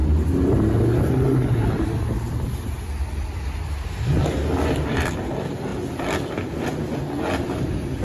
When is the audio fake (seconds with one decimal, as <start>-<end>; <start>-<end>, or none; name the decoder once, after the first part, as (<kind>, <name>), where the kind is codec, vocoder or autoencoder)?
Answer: none